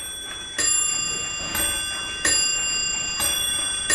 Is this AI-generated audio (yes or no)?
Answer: no